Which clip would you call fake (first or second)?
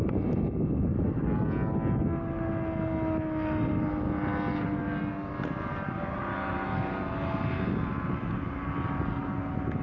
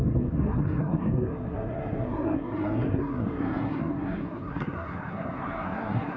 second